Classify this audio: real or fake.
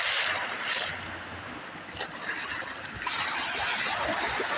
real